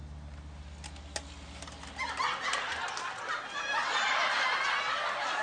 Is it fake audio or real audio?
real